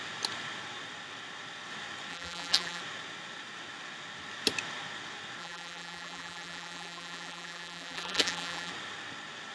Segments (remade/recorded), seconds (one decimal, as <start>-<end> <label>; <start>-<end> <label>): 0.0-2.1 recorded; 2.1-2.8 remade; 2.8-5.4 recorded; 5.4-8.7 remade; 8.7-9.5 recorded